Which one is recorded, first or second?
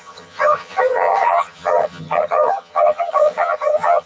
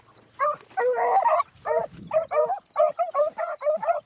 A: second